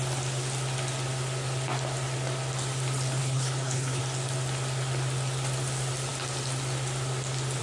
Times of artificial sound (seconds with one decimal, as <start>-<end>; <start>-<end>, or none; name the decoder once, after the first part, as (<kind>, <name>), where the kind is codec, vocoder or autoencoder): 3.2-4.0 (codec, HILCodec)